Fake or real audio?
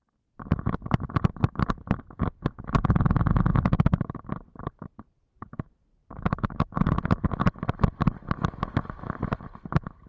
real